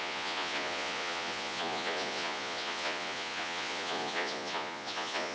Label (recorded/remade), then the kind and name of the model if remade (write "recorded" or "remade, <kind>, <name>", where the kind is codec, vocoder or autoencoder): remade, vocoder, Vocos